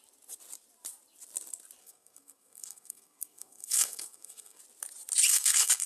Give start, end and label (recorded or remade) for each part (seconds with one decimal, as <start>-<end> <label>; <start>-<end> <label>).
0.0-1.8 recorded; 1.8-4.6 remade; 4.6-5.3 recorded; 5.3-5.9 remade